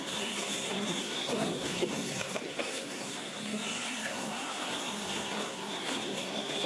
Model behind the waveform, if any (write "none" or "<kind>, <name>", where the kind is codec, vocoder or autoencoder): codec, SNAC